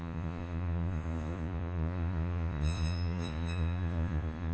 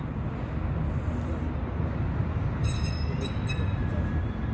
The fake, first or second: first